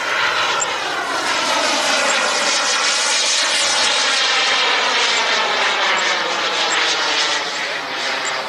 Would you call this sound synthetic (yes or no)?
no